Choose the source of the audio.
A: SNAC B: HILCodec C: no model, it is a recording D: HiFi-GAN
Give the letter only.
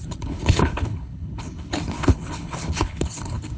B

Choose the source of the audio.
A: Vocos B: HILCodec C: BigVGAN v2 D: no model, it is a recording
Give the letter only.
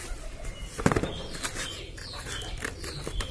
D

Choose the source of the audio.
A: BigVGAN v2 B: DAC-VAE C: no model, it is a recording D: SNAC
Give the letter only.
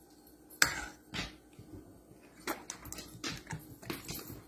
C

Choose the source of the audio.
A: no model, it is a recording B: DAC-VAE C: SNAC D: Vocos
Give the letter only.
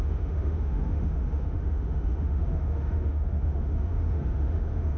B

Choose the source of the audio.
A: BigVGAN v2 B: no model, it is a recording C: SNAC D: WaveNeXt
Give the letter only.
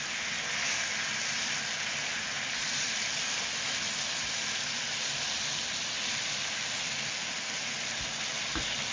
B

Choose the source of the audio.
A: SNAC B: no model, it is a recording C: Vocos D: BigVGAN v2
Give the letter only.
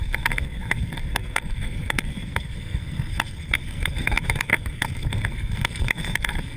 A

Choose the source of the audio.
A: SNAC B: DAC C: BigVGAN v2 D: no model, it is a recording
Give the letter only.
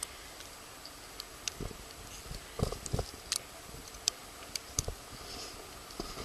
D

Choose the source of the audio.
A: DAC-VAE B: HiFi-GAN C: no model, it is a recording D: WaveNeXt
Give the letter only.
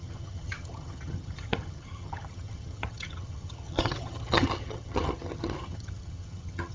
B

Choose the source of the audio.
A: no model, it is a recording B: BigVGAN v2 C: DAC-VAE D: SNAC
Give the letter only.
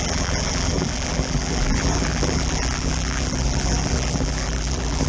B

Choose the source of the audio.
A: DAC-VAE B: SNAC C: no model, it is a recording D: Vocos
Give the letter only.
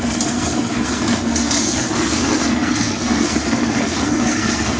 B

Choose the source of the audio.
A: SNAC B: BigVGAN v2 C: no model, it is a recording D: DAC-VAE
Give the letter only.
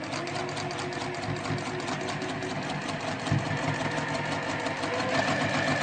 C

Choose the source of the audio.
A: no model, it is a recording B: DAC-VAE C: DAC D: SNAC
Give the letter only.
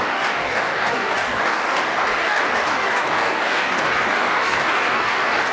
C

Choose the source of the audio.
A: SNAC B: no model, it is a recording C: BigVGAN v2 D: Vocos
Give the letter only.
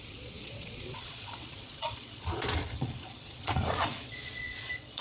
D